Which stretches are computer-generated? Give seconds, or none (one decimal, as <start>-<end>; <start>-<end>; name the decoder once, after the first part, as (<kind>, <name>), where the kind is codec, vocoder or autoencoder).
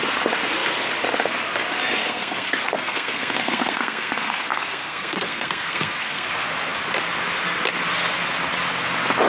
2.0-6.3 (codec, SNAC)